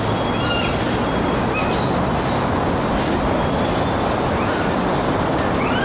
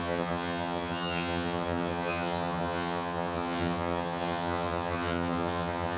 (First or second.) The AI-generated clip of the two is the second